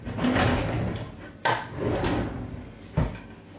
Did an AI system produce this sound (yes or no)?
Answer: no